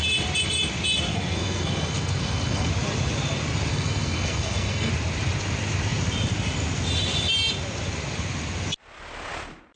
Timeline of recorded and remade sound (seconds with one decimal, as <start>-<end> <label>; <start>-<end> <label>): 0.0-1.1 recorded; 1.1-2.7 remade; 2.7-3.7 recorded; 3.7-4.9 remade; 4.9-9.8 recorded